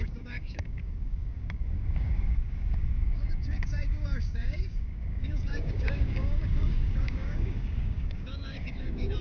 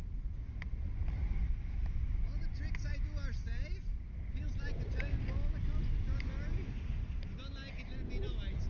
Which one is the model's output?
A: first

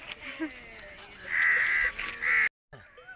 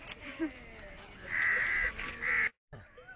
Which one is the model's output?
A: second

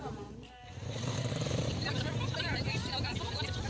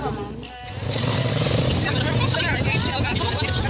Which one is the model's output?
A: first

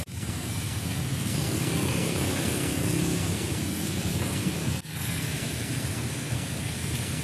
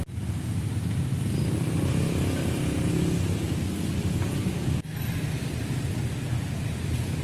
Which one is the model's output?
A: first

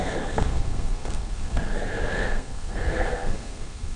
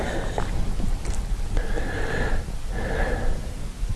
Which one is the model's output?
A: first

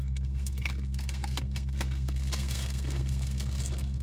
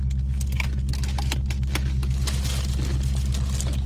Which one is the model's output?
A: first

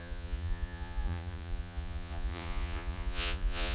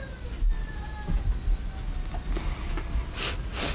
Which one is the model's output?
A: first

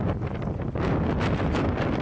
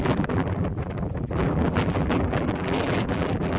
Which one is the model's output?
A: second